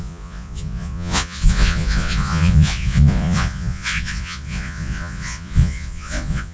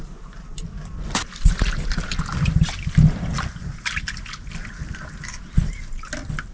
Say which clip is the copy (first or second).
first